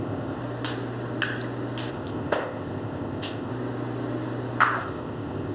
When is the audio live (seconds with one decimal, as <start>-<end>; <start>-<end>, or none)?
0.4-1.9; 3.5-4.8